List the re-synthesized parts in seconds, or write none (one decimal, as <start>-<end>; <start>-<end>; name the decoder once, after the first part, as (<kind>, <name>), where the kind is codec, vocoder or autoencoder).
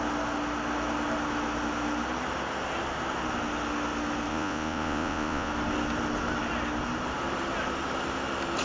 4.3-5.5 (vocoder, Vocos)